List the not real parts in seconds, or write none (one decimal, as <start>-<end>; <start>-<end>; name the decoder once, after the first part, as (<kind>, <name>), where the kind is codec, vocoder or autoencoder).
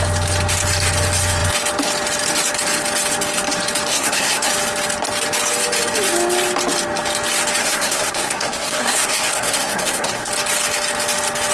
3.9-4.5 (codec, SNAC); 7.6-10.3